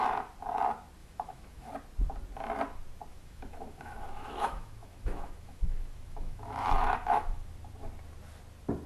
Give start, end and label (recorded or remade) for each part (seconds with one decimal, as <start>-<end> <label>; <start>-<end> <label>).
0.0-1.0 recorded; 1.0-1.7 remade; 1.7-3.1 recorded; 3.1-7.5 remade; 7.5-8.9 recorded